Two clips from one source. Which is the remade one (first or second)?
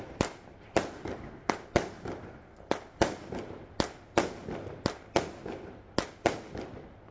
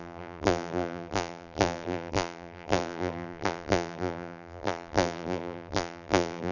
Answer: second